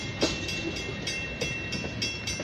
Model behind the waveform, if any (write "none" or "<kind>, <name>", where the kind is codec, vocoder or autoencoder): none